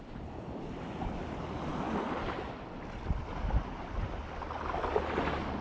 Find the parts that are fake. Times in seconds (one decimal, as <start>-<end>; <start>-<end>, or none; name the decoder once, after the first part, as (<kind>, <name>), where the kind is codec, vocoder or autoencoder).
none

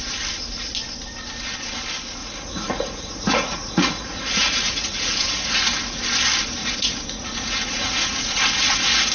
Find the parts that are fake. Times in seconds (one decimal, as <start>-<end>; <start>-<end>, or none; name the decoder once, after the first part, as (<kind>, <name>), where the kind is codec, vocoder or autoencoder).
2.2-6.0 (vocoder, Vocos); 6.6-9.1

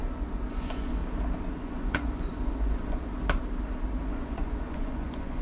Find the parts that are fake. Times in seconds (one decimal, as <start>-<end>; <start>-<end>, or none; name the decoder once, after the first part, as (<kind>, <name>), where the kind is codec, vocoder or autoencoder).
0.5-1.0 (vocoder, Vocos); 1.5-3.1; 4.0-5.4

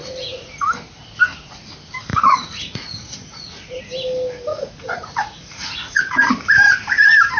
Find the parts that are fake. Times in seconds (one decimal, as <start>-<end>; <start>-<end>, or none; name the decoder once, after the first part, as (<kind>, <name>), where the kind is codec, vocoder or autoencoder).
0.0-0.5 (vocoder, Vocos); 2.1-3.8; 4.5-6.3

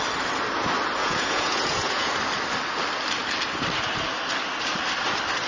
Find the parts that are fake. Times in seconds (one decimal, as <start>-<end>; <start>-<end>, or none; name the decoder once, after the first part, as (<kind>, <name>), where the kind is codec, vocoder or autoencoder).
1.0-2.1 (vocoder, Vocos)

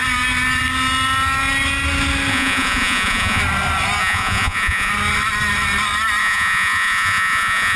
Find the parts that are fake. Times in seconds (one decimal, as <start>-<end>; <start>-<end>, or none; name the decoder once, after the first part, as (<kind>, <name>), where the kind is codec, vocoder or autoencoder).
2.3-3.4 (vocoder, Vocos); 4.0-4.9; 6.2-7.8